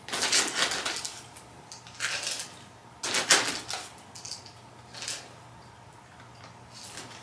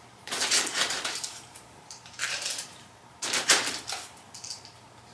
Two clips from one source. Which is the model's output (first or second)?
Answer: second